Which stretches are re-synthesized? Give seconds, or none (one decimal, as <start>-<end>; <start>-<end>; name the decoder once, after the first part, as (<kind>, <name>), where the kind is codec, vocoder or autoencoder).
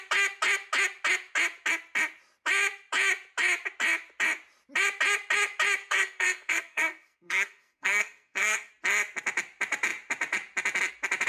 5.8-8.7 (codec, SNAC)